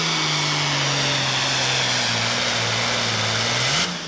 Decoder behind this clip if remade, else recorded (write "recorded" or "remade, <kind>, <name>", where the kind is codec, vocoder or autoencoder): recorded